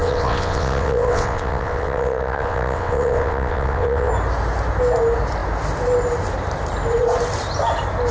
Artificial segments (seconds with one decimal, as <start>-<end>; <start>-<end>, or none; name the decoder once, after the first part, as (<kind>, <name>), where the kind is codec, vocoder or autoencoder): 0.0-4.1 (vocoder, WaveNeXt)